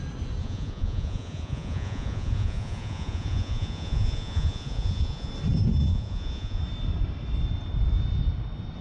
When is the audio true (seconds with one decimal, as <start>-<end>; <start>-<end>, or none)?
0.0-0.4; 5.3-5.9; 6.6-8.8